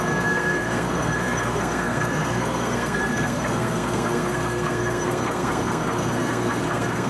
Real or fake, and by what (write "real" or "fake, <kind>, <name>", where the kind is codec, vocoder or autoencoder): fake, codec, SNAC